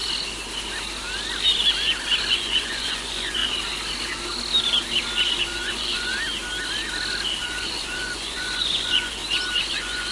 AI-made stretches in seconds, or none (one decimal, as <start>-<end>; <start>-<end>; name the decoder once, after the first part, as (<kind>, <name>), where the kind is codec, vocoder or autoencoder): 2.2-3.4 (vocoder, Vocos); 5.4-6.1; 7.4-9.2; 9.7-10.1